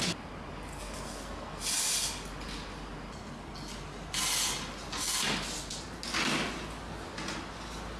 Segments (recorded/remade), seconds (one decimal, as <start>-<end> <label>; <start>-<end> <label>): 0.0-0.7 recorded; 0.7-1.6 remade; 1.6-8.0 recorded